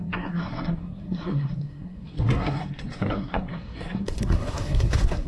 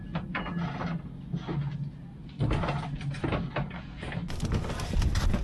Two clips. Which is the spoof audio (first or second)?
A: first